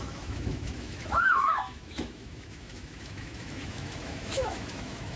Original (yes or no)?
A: no